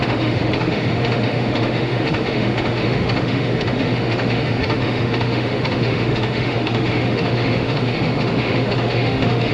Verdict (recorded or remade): remade